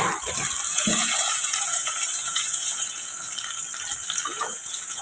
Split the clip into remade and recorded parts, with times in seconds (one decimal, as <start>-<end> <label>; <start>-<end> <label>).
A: 0.0-0.7 recorded; 0.7-3.3 remade; 3.3-4.3 recorded; 4.3-5.0 remade

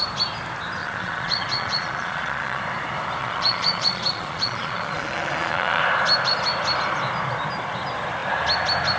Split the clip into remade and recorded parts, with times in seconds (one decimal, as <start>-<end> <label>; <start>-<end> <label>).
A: 0.0-0.8 recorded; 0.8-2.6 remade; 2.6-3.2 recorded; 3.2-5.8 remade; 5.8-9.0 recorded

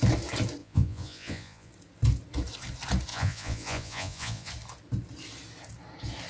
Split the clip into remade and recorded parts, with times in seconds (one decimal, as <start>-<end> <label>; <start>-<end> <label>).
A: 0.0-0.6 recorded; 0.6-1.7 remade; 1.7-3.1 recorded; 3.1-4.5 remade; 4.5-6.3 recorded

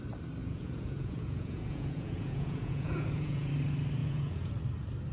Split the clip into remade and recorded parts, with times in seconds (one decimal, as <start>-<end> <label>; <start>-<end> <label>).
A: 0.0-0.4 recorded; 0.4-3.5 remade; 3.5-4.0 recorded; 4.0-4.5 remade; 4.5-5.1 recorded

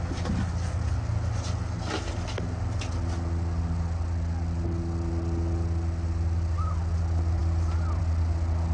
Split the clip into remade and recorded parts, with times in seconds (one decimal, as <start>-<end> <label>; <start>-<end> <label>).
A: 0.0-8.7 recorded

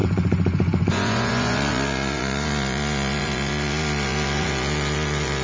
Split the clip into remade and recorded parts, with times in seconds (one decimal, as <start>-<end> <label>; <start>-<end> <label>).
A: 0.0-5.4 remade

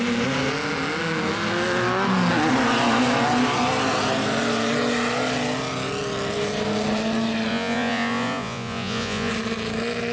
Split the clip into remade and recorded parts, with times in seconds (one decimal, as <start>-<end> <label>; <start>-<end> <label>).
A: 0.0-7.5 recorded; 7.5-9.3 remade; 9.3-10.1 recorded